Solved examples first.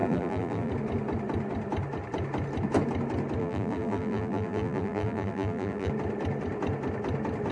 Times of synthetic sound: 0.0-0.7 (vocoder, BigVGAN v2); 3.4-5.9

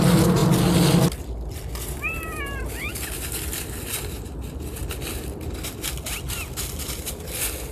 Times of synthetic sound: none